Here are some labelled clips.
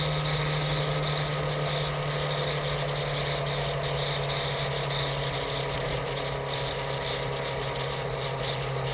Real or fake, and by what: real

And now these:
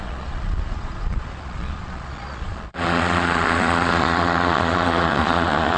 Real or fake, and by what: fake, vocoder, Vocos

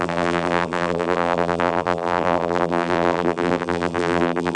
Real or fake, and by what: fake, vocoder, BigVGAN v2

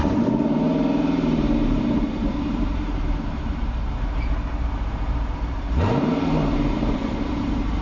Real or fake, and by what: fake, vocoder, BigVGAN v2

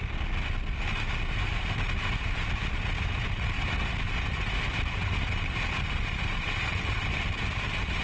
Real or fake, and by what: real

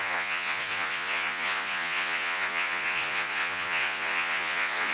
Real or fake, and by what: fake, vocoder, Vocos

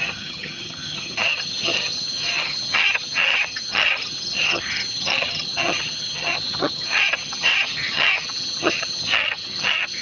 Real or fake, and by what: fake, vocoder, HiFi-GAN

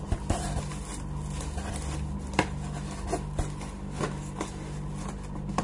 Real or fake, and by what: real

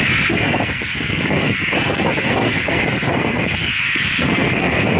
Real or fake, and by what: fake, codec, SNAC